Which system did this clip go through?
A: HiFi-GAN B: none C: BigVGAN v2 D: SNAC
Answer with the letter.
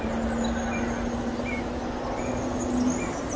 B